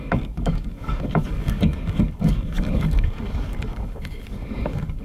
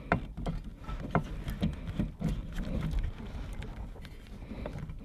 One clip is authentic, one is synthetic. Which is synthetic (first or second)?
first